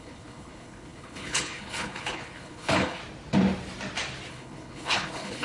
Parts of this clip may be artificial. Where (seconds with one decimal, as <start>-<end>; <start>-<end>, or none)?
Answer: 0.0-3.0; 4.3-5.4